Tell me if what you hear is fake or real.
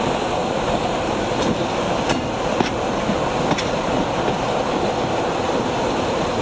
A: fake